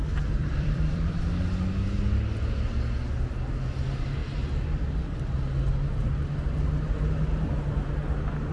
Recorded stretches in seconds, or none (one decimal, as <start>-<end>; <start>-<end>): 0.0-0.4; 1.2-8.5